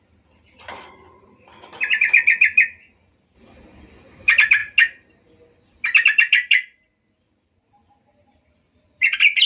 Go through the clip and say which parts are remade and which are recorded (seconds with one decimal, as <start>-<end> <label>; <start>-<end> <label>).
0.0-9.5 recorded